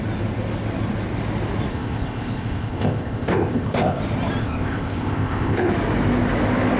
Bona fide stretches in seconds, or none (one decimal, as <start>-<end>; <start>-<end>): 0.0-1.7; 4.0-4.4; 5.7-6.8